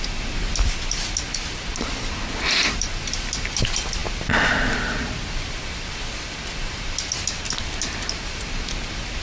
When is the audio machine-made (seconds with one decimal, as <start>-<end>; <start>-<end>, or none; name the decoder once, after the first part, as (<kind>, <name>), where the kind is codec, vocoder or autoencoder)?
none